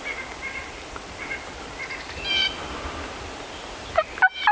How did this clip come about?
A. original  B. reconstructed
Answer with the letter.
A